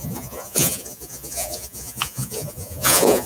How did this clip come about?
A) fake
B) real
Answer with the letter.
A